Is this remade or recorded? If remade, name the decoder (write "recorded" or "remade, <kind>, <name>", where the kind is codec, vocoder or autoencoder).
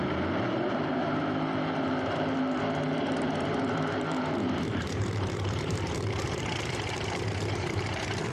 remade, vocoder, BigVGAN v2